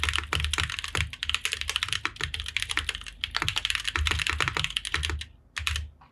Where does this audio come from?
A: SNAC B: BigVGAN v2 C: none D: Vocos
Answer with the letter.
C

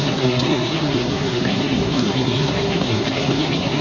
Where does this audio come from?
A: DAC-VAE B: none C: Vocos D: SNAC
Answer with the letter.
D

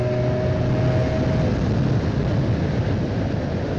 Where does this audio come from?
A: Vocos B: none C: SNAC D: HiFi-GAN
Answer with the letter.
B